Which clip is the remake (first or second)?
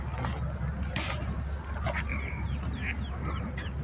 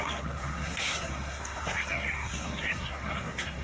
second